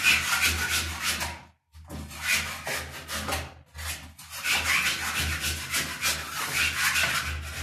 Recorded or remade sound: recorded